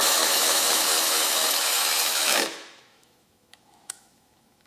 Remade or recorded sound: remade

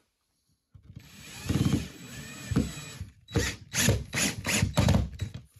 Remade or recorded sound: recorded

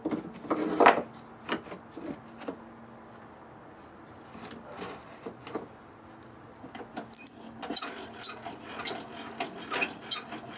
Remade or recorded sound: recorded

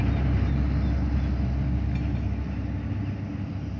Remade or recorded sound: recorded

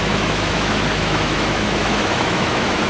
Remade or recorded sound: remade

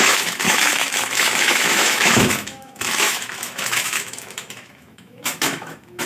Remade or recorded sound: remade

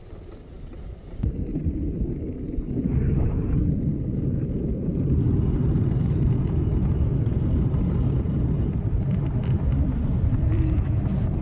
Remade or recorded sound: recorded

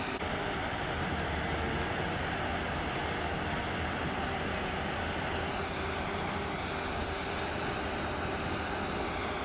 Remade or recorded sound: recorded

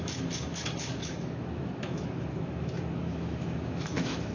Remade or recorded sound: remade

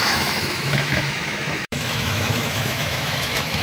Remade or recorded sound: remade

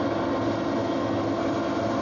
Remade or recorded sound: recorded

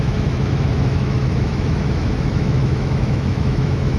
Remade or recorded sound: remade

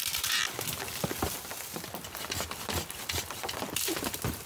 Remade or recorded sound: recorded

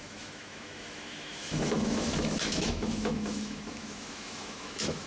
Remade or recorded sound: remade